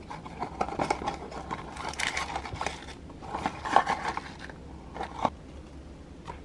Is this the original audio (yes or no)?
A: yes